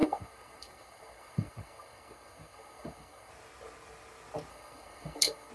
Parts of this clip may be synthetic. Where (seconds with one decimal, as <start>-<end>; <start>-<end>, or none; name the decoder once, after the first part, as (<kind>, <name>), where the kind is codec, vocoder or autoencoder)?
0.0-3.3 (codec, SNAC); 4.5-5.5